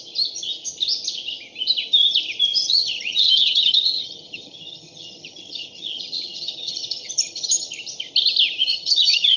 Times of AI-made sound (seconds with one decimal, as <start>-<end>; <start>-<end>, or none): 2.5-7.7; 8.6-9.4